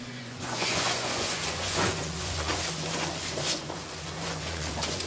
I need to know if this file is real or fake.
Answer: fake